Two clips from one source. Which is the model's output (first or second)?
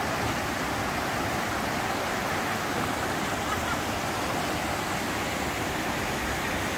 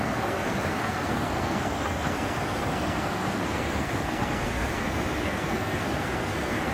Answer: second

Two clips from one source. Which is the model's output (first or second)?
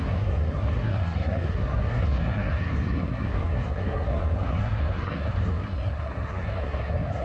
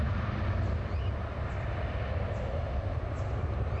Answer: first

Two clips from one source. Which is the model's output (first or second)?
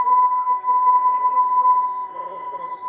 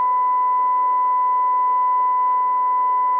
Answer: first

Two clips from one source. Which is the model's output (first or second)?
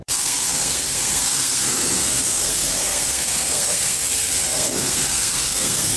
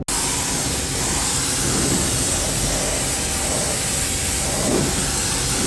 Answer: first